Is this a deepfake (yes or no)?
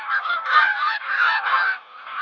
yes